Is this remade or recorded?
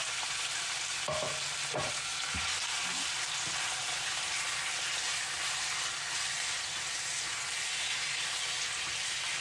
recorded